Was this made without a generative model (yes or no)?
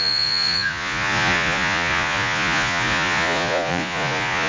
no